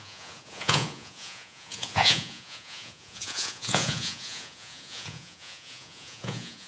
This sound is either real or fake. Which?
fake